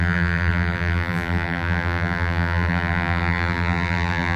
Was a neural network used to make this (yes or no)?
yes